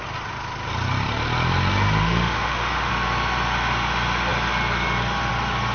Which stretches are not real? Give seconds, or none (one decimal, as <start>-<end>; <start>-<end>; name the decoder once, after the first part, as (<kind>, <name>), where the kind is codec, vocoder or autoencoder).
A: 2.0-2.9 (autoencoder, DAC-VAE)